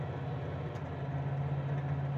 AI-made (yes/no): no